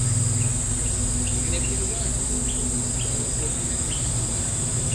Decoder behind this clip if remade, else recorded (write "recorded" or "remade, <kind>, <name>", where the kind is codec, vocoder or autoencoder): recorded